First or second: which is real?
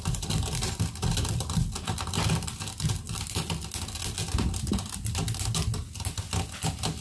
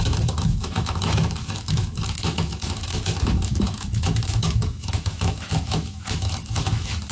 first